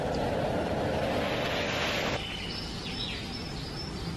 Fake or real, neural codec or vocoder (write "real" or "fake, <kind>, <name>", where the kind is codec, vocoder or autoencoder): real